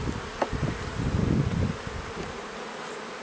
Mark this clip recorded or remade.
remade